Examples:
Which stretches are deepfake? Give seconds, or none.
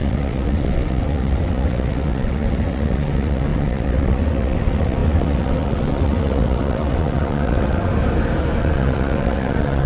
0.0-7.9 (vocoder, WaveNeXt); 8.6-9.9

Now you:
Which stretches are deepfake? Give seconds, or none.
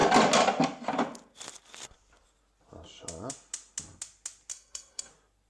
4.5-5.1 (codec, SNAC)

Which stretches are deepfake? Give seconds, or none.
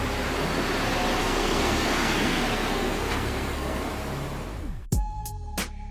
1.2-3.9 (codec, SNAC); 4.6-5.3